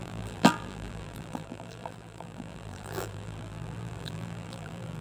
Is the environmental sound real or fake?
fake